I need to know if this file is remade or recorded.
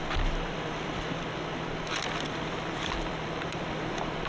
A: remade